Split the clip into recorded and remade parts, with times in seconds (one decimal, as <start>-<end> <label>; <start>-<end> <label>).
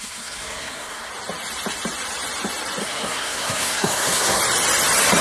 0.0-1.1 remade; 1.1-2.8 recorded; 2.8-4.4 remade; 4.4-5.2 recorded